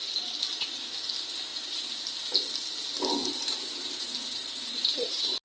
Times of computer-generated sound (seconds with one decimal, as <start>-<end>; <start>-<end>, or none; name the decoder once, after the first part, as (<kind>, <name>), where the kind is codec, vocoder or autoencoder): 1.5-2.2 (vocoder, BigVGAN v2); 3.2-5.4